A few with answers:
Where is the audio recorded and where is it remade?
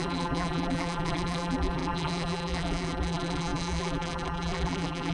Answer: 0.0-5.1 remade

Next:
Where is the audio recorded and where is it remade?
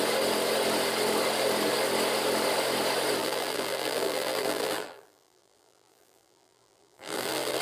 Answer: 0.0-3.2 recorded; 3.2-7.6 remade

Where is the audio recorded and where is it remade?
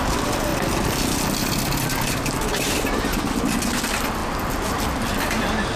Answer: 0.0-5.8 recorded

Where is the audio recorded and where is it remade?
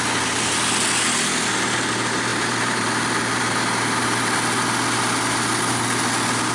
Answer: 0.0-2.3 recorded; 2.3-2.9 remade; 2.9-6.5 recorded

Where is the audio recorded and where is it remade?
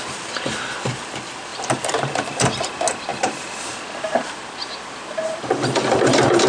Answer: 0.0-6.5 recorded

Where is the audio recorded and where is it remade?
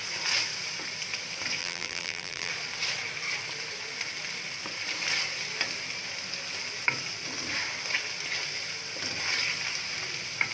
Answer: 0.0-1.6 recorded; 1.6-2.5 remade; 2.5-10.5 recorded